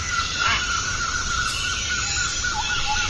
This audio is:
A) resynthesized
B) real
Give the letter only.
B